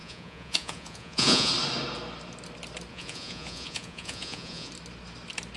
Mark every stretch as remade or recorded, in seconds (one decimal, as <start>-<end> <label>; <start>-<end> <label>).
0.0-1.5 remade; 1.5-2.9 recorded; 2.9-4.7 remade; 4.7-5.6 recorded